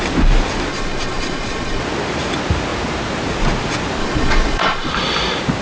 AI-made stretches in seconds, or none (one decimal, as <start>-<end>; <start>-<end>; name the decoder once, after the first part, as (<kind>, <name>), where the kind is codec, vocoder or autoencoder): 0.7-1.8 (vocoder, Vocos); 4.0-4.9